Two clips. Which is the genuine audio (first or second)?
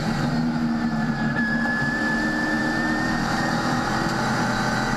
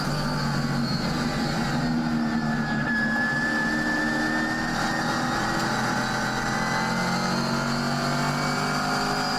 second